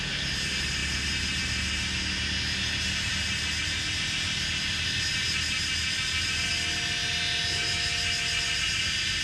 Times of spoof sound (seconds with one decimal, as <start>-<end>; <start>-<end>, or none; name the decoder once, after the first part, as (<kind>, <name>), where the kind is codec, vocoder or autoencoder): none